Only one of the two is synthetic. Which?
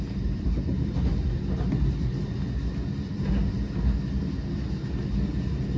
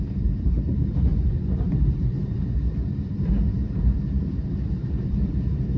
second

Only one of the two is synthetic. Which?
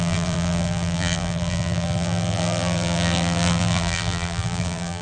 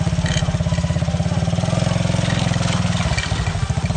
first